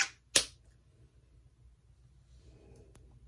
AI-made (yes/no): no